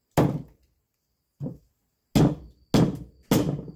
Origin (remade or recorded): recorded